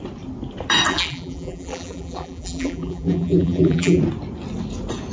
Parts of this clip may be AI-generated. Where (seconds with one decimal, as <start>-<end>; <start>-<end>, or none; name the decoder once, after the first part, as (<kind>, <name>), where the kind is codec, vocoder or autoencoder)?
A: 0.9-4.0 (vocoder, BigVGAN v2)